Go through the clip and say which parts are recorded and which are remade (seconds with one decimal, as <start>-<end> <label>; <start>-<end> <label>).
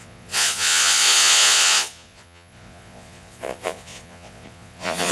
0.0-5.1 remade